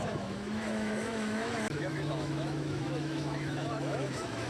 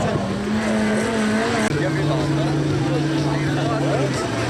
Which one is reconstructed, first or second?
first